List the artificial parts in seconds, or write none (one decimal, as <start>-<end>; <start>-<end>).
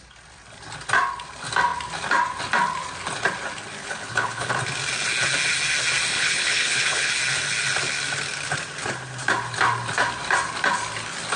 3.8-4.5; 6.1-7.1